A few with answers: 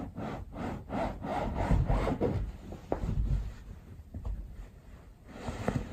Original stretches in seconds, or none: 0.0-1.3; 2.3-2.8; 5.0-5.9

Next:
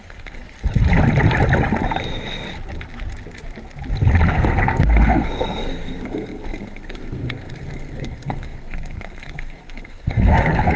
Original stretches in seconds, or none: 0.4-4.3

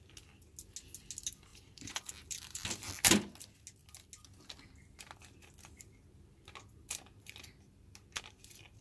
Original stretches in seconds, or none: 0.0-1.5; 2.1-8.8

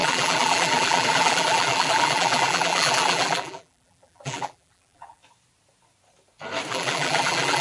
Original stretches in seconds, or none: 5.2-6.7

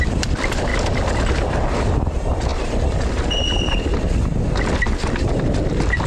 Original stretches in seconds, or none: 0.7-1.3; 2.5-5.5

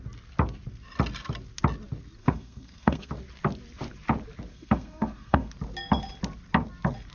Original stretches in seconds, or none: 0.0-2.2; 3.1-4.5; 5.5-7.1

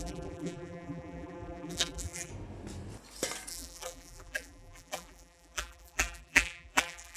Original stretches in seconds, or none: 2.3-3.5